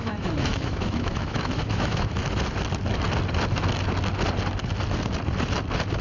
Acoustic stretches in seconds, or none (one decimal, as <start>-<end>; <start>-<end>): 2.2-6.0